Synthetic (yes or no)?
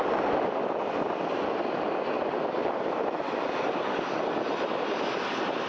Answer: no